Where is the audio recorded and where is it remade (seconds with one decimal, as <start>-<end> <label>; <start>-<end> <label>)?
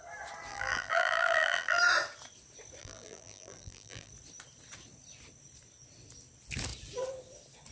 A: 0.0-0.5 recorded; 0.5-1.8 remade; 1.8-2.8 recorded; 2.8-4.1 remade; 4.1-7.7 recorded